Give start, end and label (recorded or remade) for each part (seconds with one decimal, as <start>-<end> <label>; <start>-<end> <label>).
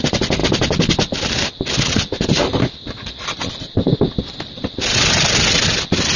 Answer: 0.0-6.2 recorded